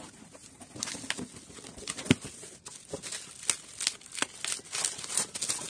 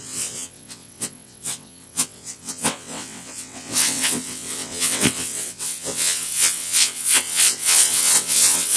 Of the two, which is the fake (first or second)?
second